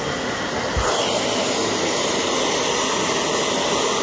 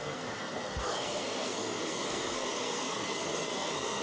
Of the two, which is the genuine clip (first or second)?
first